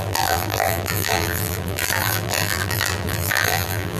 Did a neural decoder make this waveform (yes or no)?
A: yes